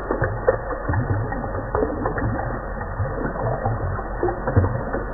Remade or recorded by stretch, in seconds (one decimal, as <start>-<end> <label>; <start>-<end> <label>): 0.0-0.8 remade; 0.8-5.1 recorded